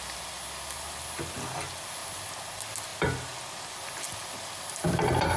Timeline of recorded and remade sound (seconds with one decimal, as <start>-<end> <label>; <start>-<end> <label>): 0.0-5.4 recorded